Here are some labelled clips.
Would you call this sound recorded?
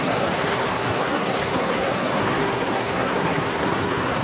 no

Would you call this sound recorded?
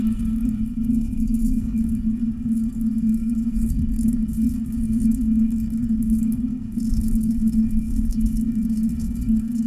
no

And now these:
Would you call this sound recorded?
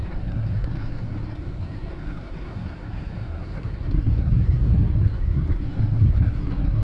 no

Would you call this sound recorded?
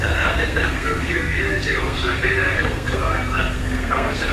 no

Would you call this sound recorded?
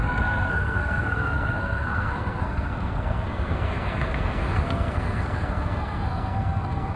no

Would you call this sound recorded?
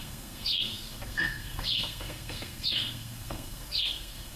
no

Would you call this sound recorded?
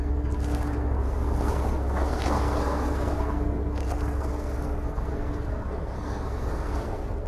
no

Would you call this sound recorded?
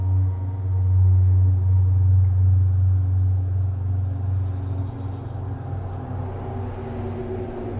yes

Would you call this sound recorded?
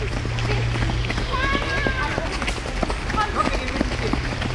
yes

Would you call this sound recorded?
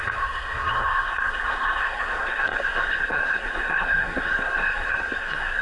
no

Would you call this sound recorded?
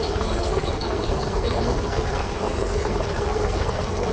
no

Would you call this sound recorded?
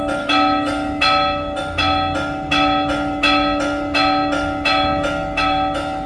yes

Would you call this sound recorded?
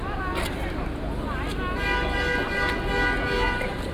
yes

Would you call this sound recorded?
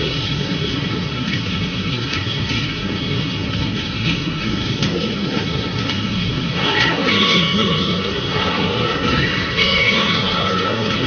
no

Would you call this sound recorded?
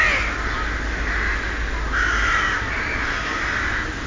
yes